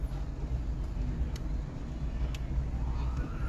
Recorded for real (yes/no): yes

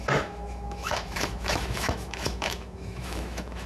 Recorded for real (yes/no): no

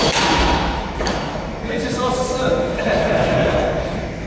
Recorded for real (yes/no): no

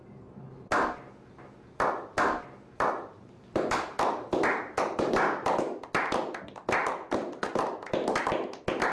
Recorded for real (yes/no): yes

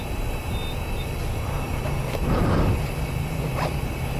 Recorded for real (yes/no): yes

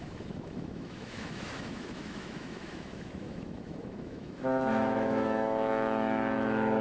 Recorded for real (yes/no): no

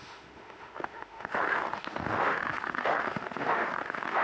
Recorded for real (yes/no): no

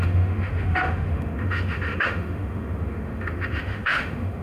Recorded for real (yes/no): no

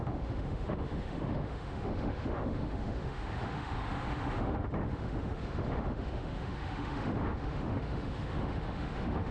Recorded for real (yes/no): no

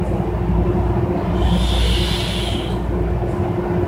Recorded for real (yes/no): yes